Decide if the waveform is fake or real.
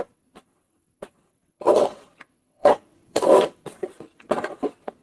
fake